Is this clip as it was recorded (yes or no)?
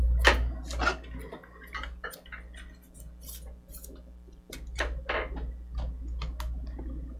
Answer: yes